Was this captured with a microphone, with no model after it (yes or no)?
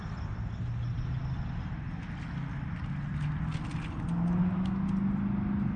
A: yes